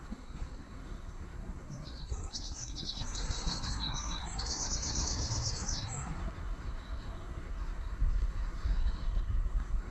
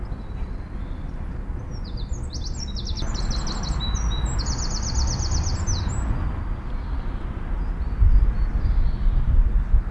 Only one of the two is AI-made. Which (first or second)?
first